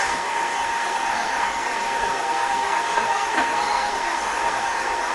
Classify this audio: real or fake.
fake